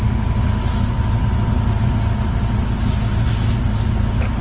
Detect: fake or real real